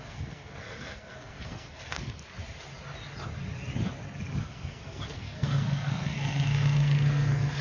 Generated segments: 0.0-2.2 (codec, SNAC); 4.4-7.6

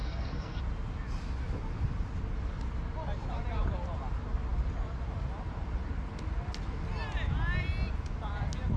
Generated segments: 0.0-0.6 (codec, SNAC)